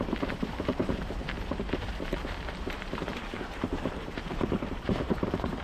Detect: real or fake fake